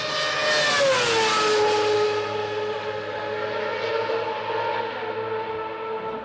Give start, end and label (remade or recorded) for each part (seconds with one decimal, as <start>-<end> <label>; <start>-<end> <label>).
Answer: 0.0-6.2 recorded